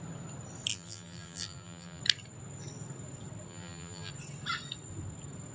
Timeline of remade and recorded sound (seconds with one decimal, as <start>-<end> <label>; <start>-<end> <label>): 0.0-0.7 recorded; 0.7-2.0 remade; 2.0-3.5 recorded; 3.5-4.1 remade; 4.1-5.5 recorded